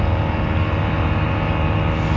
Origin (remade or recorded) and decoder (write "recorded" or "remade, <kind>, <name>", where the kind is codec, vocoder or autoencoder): recorded